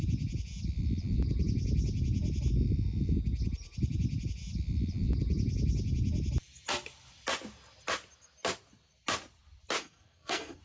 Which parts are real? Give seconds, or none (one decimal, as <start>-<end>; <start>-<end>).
0.0-9.8